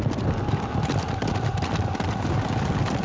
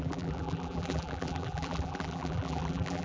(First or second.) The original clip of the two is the first